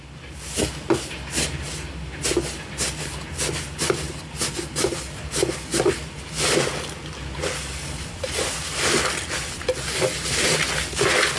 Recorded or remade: recorded